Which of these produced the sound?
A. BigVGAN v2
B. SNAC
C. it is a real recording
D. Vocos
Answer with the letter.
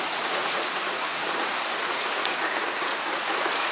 D